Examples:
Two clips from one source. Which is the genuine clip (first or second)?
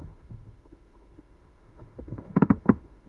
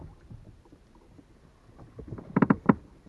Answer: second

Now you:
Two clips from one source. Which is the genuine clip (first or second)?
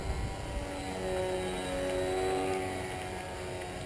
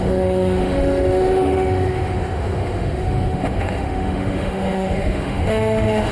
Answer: first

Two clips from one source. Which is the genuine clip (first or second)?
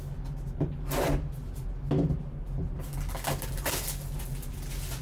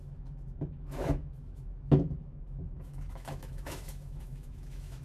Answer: first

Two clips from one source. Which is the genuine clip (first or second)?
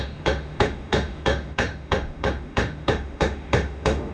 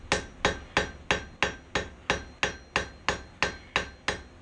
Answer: second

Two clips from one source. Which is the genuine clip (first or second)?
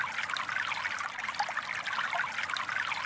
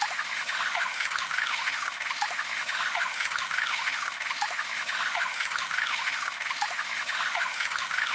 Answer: first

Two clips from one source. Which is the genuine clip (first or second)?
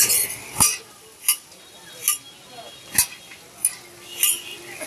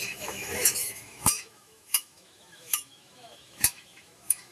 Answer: first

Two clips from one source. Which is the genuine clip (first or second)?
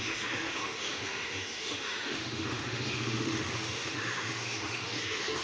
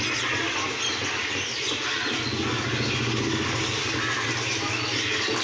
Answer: second